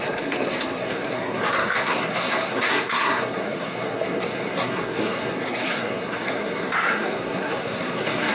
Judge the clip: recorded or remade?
remade